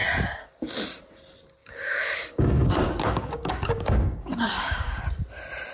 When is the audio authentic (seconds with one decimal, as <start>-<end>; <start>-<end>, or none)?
0.0-1.6; 5.0-5.7